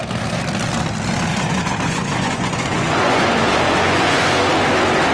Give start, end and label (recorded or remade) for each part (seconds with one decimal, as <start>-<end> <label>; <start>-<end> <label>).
0.0-1.3 recorded; 1.3-4.4 remade; 4.4-5.1 recorded